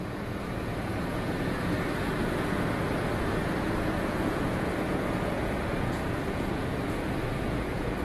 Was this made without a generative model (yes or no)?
no